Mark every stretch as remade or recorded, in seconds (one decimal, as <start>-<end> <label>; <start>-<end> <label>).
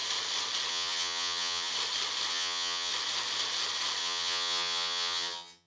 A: 0.0-0.7 recorded; 0.7-1.7 remade; 1.7-2.3 recorded; 2.3-2.9 remade; 2.9-4.0 recorded; 4.0-5.7 remade